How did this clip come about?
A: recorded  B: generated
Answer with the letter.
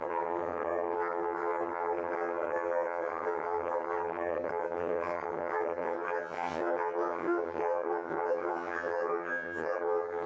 B